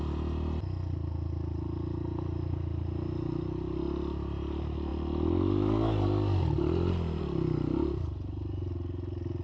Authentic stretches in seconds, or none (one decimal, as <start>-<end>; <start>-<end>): 0.0-9.4